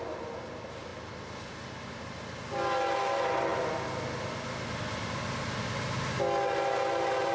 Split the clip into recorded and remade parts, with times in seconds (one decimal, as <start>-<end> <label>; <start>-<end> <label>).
0.0-7.3 recorded